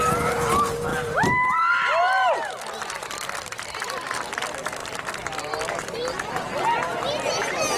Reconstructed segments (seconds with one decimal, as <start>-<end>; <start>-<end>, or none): 0.9-2.6